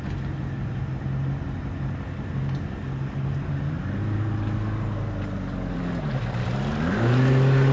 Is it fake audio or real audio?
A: real